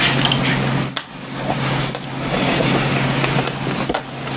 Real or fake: real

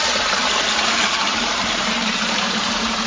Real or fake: fake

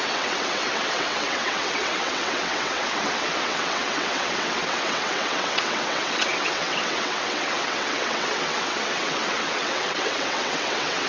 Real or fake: fake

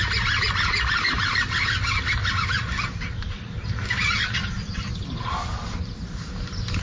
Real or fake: real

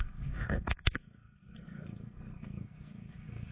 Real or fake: fake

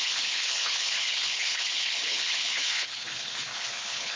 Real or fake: fake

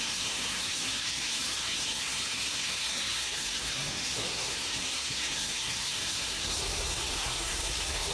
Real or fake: fake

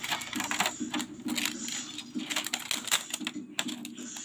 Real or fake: real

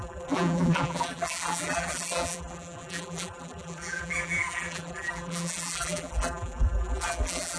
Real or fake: fake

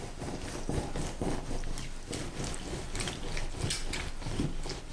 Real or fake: real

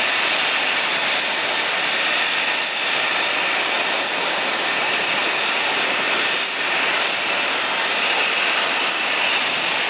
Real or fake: fake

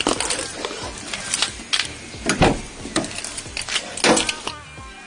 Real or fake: real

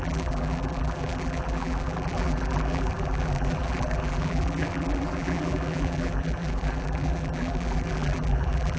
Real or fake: fake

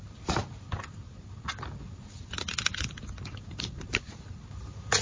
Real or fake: real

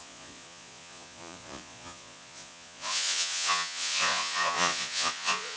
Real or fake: fake